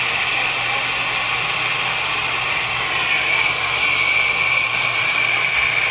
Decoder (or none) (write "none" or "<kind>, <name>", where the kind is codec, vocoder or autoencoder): none